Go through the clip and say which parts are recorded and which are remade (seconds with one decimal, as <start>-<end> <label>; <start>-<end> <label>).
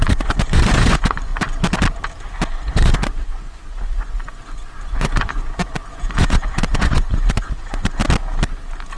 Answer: 0.0-1.3 remade; 1.3-2.5 recorded; 2.5-8.0 remade; 8.0-9.0 recorded